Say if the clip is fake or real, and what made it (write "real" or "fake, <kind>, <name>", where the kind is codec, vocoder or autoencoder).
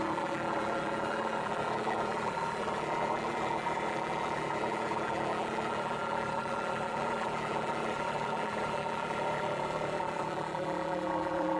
fake, vocoder, BigVGAN v2